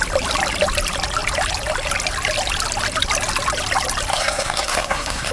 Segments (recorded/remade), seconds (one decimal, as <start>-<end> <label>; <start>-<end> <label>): 0.0-4.1 recorded; 4.1-5.3 remade